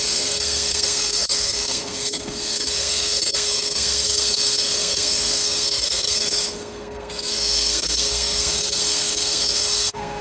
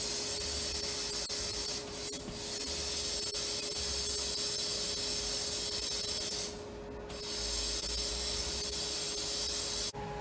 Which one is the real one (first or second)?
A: second